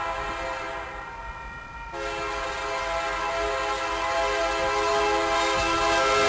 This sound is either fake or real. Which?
real